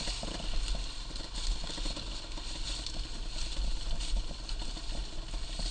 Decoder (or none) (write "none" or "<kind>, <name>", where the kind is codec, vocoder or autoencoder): none